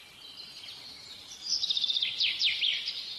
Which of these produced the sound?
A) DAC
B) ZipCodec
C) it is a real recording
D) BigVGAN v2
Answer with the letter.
C